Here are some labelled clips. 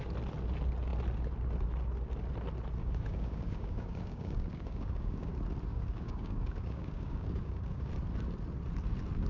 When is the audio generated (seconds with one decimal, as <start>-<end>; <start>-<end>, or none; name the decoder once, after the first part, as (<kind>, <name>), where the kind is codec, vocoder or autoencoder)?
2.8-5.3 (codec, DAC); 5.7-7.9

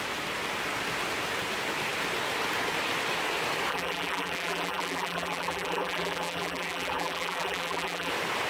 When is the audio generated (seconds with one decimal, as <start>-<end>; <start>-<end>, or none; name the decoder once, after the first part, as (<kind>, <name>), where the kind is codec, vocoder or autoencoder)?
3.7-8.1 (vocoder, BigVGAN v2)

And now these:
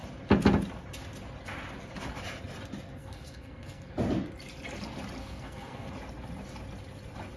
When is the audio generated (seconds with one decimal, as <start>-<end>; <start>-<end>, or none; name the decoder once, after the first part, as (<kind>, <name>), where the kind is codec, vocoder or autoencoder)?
3.0-3.9 (codec, SNAC); 5.2-5.9